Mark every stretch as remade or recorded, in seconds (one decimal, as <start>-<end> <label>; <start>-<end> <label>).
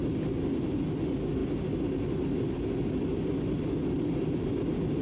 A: 0.0-5.0 recorded